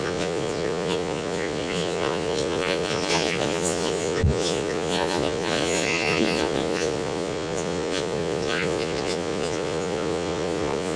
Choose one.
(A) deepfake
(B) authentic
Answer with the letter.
A